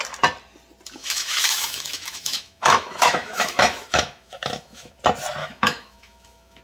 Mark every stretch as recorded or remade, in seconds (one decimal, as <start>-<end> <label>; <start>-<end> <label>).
0.0-1.0 recorded; 1.0-5.0 remade; 5.0-5.4 recorded; 5.4-6.6 remade